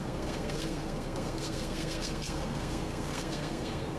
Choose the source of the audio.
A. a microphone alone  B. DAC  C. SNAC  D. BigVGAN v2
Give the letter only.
C